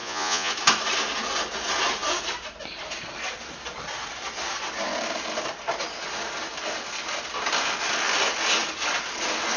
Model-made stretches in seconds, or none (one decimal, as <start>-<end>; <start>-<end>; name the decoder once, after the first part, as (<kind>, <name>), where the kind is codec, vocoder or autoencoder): 0.0-0.5 (vocoder, Vocos)